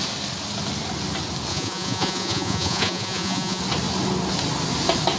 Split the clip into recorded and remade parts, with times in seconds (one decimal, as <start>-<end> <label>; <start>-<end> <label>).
0.0-1.5 recorded; 1.5-3.6 remade; 3.6-5.2 recorded